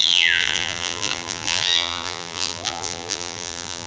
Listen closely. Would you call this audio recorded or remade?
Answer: remade